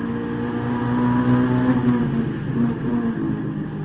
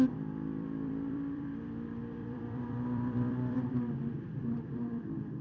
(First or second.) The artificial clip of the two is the second